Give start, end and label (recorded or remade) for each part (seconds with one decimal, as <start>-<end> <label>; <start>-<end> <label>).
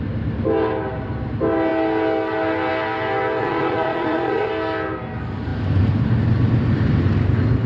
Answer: 0.0-3.4 recorded; 3.4-4.5 remade; 4.5-7.7 recorded